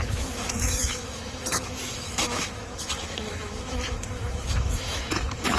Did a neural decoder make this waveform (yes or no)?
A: yes